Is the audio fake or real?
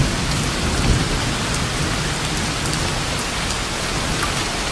real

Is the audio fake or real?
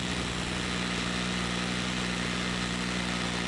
real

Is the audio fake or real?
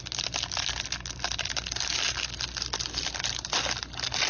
real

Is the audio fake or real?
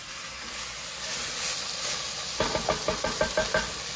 real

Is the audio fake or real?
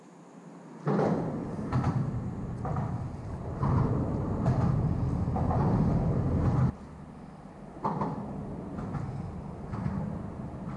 real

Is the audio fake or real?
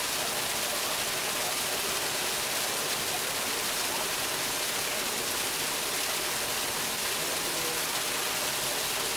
real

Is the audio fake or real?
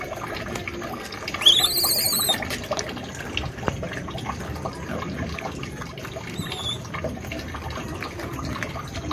real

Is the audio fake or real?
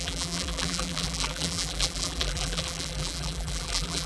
fake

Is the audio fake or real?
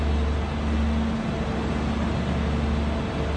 real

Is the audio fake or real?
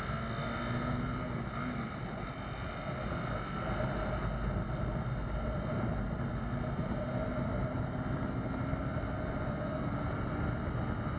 real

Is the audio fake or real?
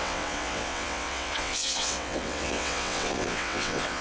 fake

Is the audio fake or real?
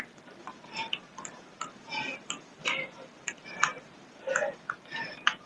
fake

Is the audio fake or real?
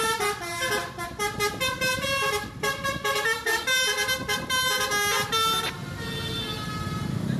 real